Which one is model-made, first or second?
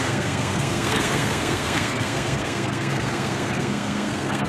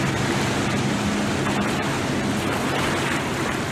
first